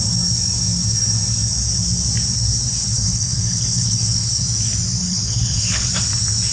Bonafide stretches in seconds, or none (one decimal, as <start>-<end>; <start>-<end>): 0.0-2.8; 4.4-5.0; 5.9-6.5